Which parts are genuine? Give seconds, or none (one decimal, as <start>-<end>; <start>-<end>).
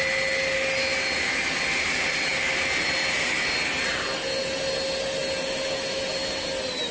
0.0-6.9